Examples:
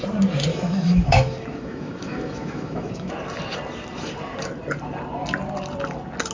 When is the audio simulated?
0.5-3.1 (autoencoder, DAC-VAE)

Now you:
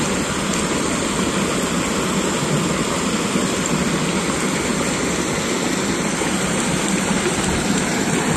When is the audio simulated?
none

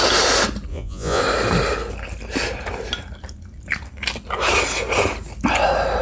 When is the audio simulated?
0.7-1.2 (vocoder, Vocos)

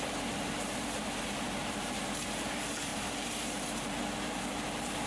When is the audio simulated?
0.0-5.1 (vocoder, BigVGAN v2)

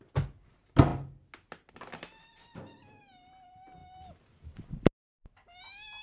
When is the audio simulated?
none

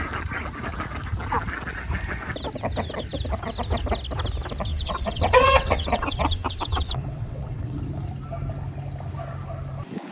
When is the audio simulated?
4.7-7.8 (vocoder, WaveNeXt)

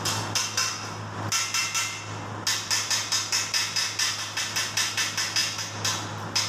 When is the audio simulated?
none

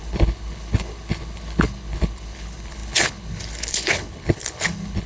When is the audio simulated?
0.0-5.1 (codec, HILCodec)